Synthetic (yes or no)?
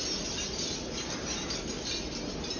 no